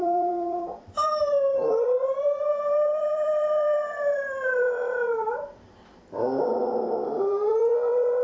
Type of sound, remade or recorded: remade